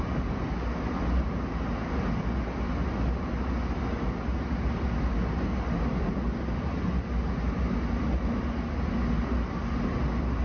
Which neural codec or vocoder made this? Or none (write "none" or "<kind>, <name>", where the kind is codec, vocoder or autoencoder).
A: none